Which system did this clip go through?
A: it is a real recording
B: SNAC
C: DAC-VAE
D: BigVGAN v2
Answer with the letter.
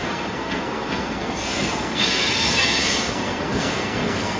B